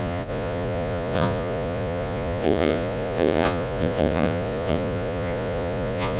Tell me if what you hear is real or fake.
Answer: fake